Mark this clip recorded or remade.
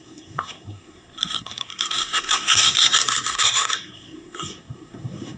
remade